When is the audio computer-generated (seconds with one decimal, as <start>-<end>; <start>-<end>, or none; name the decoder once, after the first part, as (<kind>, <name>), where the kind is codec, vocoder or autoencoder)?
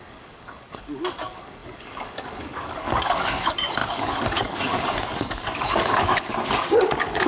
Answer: 0.0-7.3 (codec, DAC)